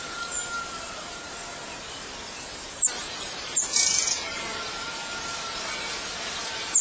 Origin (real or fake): fake